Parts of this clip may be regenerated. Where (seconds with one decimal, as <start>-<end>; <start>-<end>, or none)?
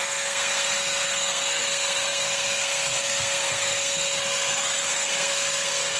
0.0-6.0